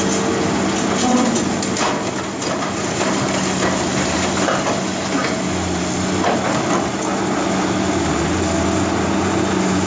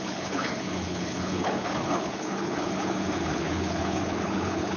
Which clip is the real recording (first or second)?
first